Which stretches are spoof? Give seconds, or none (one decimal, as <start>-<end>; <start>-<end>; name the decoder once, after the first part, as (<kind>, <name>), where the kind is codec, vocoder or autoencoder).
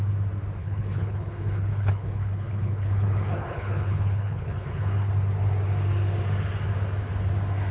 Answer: 0.6-5.1 (codec, HILCodec)